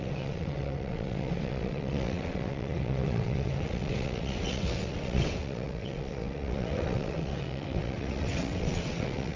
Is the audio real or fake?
fake